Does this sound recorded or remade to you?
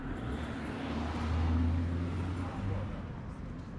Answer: recorded